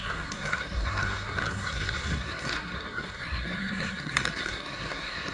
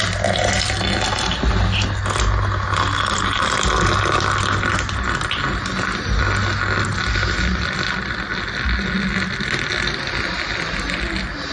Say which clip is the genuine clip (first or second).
second